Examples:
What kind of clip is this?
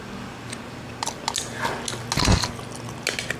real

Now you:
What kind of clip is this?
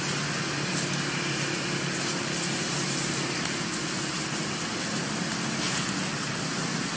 real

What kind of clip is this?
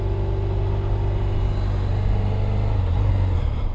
real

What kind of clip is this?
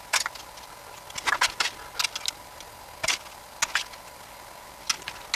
real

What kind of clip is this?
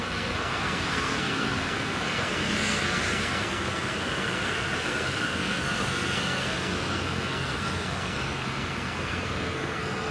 fake